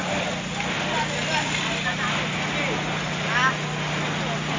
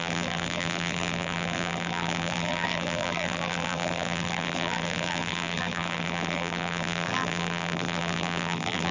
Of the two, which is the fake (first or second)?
second